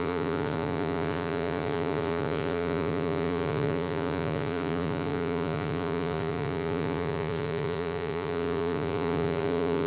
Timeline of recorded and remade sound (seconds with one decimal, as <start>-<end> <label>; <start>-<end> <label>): 0.0-9.9 remade